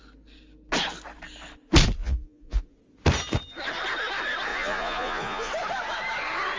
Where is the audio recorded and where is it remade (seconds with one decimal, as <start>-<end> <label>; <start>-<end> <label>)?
0.0-2.0 recorded; 2.0-2.6 remade; 2.6-4.5 recorded; 4.5-5.5 remade; 5.5-6.6 recorded

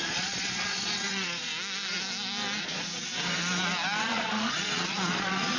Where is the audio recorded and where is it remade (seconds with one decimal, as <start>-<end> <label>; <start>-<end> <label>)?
0.0-1.5 remade; 1.5-2.6 recorded; 2.6-3.1 remade; 3.1-4.0 recorded; 4.0-5.6 remade

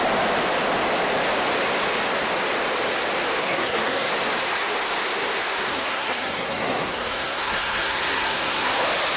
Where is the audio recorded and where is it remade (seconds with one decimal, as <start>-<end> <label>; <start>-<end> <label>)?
0.0-3.4 recorded; 3.4-4.1 remade; 4.1-5.7 recorded; 5.7-8.7 remade; 8.7-9.2 recorded